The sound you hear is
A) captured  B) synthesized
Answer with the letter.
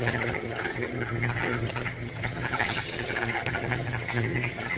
B